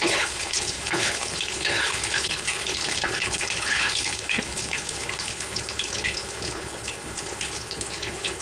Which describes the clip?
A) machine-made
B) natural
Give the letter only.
A